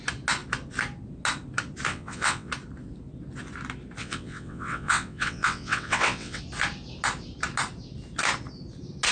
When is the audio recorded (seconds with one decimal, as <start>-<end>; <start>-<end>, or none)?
0.0-1.9; 2.5-4.0; 6.4-9.1